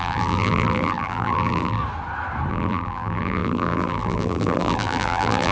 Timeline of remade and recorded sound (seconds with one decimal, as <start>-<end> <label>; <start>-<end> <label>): 0.0-1.8 remade; 1.8-2.5 recorded; 2.5-5.5 remade